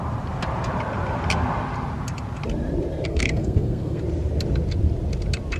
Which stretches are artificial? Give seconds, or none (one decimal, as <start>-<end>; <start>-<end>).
3.1-4.0